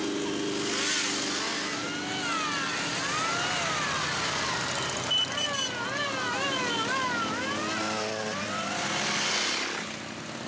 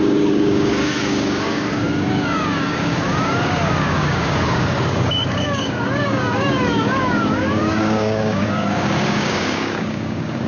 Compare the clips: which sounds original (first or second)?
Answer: first